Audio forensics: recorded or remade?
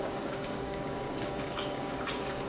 remade